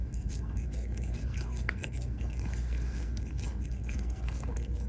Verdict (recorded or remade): remade